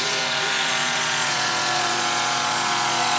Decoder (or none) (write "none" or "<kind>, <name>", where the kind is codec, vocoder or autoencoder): vocoder, Vocos